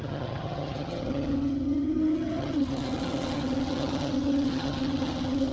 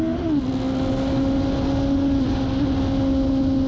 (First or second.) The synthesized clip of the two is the first